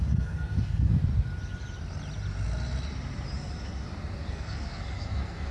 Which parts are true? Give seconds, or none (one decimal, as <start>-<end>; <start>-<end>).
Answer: 1.0-4.3